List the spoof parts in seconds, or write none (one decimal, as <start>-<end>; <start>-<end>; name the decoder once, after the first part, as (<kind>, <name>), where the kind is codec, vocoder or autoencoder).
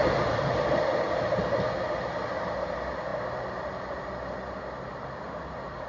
none